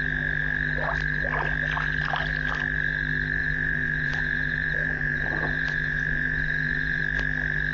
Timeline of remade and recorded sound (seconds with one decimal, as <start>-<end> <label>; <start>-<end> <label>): 0.0-3.4 recorded; 3.4-7.0 remade; 7.0-7.7 recorded